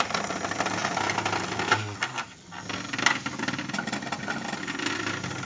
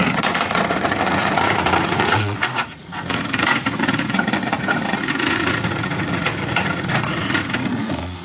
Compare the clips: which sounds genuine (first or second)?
first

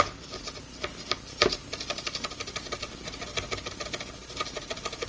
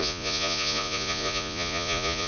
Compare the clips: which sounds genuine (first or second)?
first